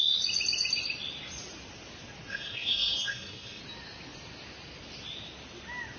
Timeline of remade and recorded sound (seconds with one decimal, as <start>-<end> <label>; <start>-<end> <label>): 0.0-2.3 recorded; 2.3-3.6 remade; 3.6-6.0 recorded